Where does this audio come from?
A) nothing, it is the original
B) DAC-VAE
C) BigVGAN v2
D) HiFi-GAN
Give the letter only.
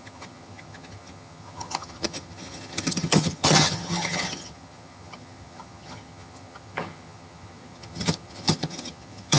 D